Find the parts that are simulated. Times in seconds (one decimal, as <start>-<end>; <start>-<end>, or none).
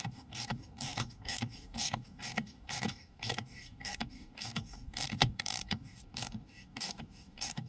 0.0-7.7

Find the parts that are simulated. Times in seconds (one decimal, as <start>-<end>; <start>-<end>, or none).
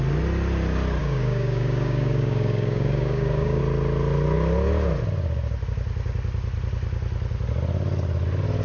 1.0-3.6